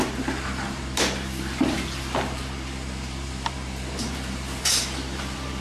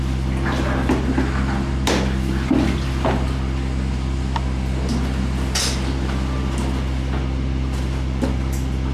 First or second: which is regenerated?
first